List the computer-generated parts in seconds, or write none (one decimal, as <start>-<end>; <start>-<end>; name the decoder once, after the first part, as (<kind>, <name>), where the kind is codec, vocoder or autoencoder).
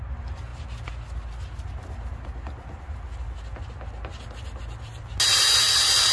none